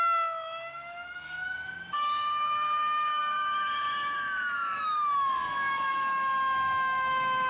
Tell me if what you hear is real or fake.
fake